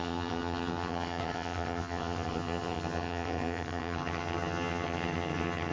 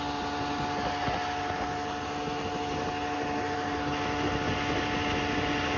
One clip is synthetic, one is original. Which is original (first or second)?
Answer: second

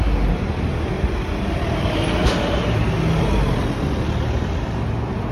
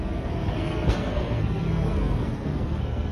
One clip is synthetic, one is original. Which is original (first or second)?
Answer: first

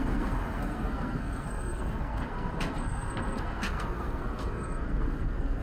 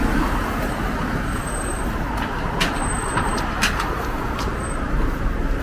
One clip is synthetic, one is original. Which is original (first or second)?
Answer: second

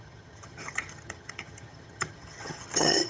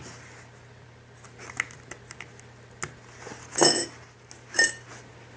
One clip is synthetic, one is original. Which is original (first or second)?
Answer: second